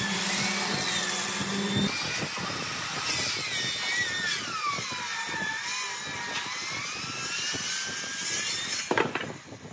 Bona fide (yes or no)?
yes